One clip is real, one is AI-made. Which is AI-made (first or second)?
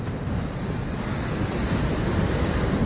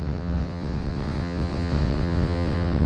second